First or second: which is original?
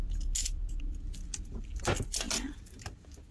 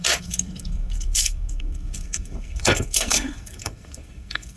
first